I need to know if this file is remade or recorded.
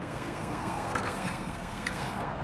remade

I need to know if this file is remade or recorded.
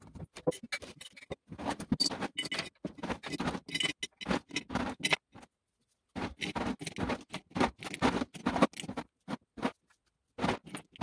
recorded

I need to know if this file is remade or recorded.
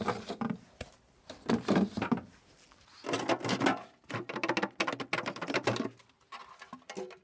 recorded